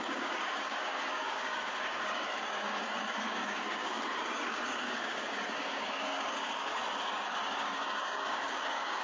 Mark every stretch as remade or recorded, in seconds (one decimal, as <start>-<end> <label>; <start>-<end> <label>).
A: 0.0-6.7 remade; 6.7-7.3 recorded; 7.3-9.0 remade